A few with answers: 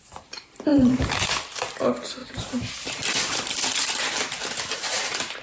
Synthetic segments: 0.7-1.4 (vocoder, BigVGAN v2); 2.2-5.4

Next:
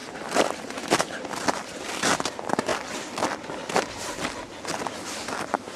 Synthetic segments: 0.0-1.3 (vocoder, BigVGAN v2)

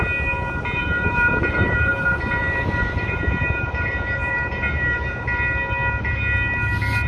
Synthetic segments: 0.8-5.1 (vocoder, BigVGAN v2)

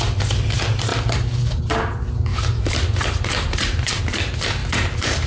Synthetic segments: 0.9-1.6 (vocoder, BigVGAN v2); 2.3-4.0; 4.6-5.3

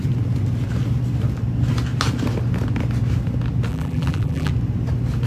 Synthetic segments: 3.7-4.5 (vocoder, BigVGAN v2)

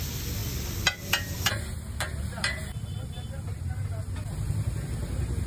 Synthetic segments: none